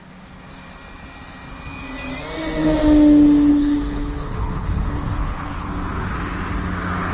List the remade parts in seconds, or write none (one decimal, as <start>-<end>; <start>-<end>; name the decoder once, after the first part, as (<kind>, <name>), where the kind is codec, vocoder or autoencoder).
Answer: 3.5-5.7 (codec, HILCodec)